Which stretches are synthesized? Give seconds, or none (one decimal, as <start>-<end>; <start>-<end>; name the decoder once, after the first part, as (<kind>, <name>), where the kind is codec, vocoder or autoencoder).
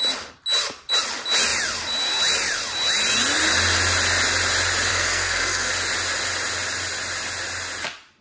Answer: 4.9-5.7 (codec, SNAC)